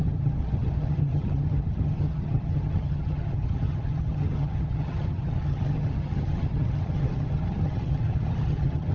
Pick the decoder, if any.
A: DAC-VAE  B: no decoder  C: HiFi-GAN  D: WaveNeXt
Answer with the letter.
C